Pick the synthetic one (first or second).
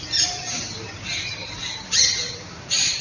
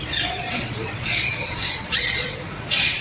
second